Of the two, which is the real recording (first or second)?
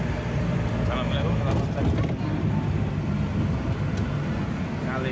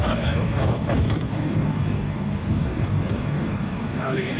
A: first